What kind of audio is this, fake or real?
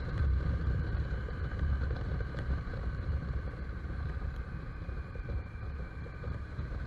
fake